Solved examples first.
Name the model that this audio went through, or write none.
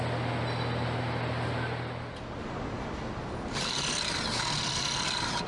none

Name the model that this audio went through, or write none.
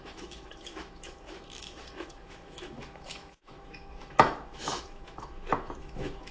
autoencoder, DAC-VAE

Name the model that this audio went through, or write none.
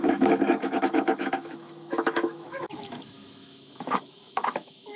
autoencoder, DAC-VAE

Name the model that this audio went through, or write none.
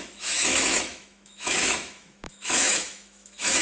autoencoder, DAC-VAE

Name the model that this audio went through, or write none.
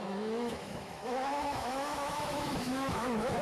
autoencoder, DAC-VAE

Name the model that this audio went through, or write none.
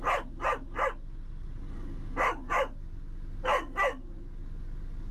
none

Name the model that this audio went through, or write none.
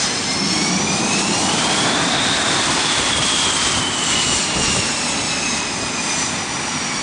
none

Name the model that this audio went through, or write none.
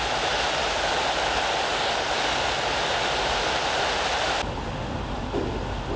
none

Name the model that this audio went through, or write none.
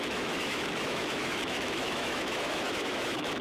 autoencoder, DAC-VAE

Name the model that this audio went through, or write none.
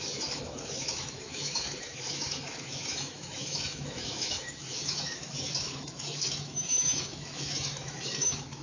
autoencoder, DAC-VAE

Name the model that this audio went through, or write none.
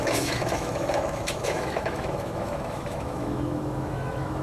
autoencoder, DAC-VAE